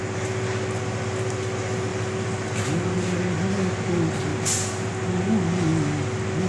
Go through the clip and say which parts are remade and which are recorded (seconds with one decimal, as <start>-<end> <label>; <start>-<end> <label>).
0.0-6.5 recorded